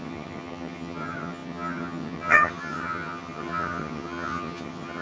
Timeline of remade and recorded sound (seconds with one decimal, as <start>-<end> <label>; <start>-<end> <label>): 0.0-5.0 remade